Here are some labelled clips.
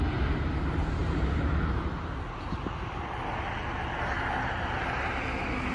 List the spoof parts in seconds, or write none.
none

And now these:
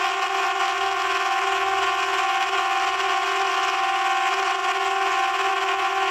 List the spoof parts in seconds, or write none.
none

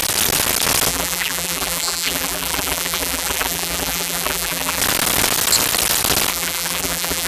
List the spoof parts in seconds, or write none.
0.9-4.8 (vocoder, BigVGAN v2); 6.3-7.3

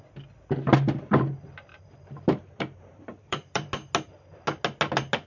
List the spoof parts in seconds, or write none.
1.7-3.7 (vocoder, BigVGAN v2)